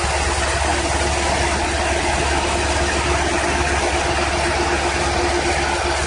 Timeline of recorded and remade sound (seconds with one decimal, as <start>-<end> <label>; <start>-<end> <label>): 0.0-6.1 recorded